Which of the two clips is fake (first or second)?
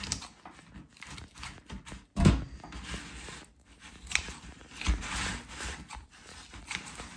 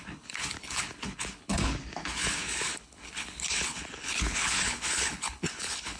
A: second